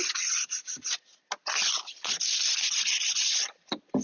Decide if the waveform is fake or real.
real